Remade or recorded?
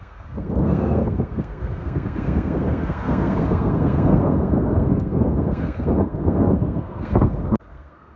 remade